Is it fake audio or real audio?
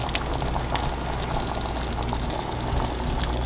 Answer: real